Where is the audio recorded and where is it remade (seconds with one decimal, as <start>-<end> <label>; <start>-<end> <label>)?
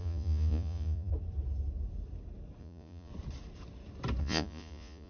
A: 0.0-1.1 remade; 1.1-2.6 recorded; 2.6-3.1 remade; 3.1-4.2 recorded; 4.2-5.1 remade